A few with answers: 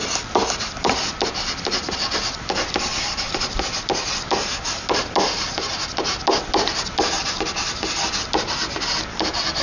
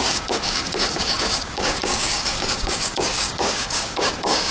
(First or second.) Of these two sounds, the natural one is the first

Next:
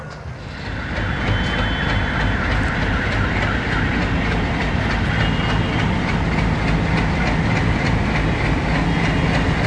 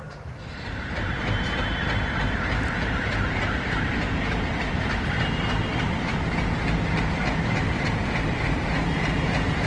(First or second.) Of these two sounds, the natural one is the first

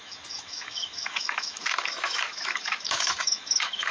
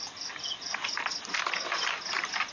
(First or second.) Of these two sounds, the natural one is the second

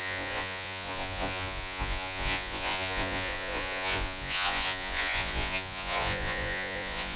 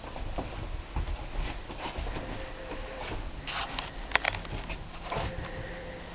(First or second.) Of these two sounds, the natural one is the second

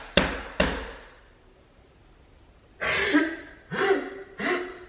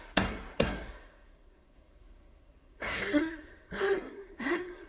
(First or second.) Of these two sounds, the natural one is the first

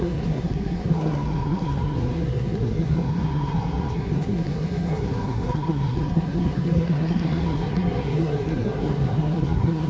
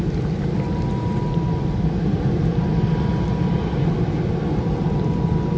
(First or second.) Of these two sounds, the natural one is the second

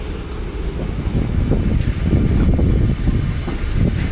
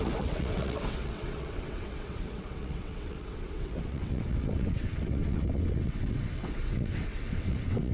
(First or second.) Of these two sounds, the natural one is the first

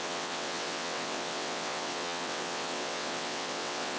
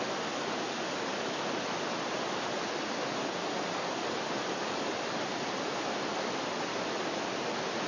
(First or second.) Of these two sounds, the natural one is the second